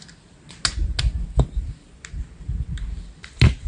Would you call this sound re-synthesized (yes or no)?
no